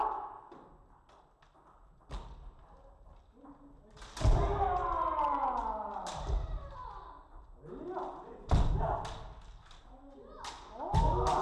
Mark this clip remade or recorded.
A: recorded